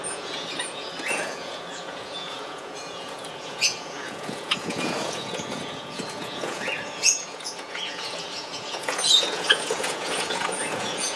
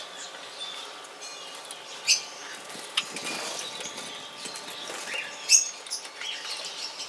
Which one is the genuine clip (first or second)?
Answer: second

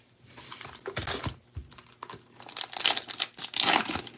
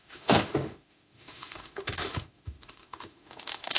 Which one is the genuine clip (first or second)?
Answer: first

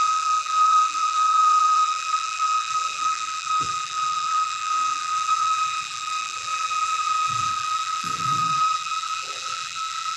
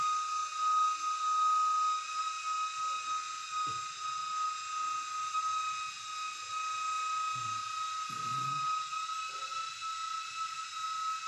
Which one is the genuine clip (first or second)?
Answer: second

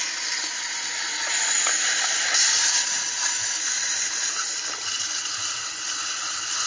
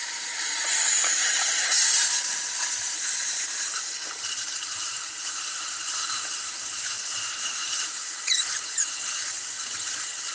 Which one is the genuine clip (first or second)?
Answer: first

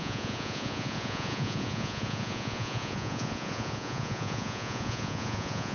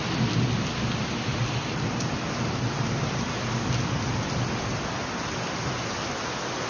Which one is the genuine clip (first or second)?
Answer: second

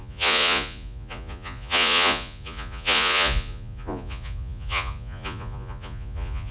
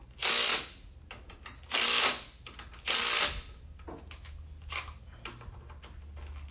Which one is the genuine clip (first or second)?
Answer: second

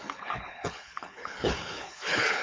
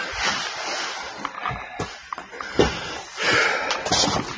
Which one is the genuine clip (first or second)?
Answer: second